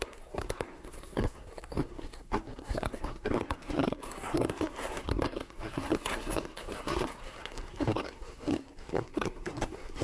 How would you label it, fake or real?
fake